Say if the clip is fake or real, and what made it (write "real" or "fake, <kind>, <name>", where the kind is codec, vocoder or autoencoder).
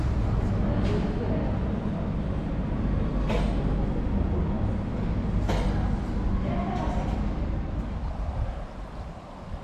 real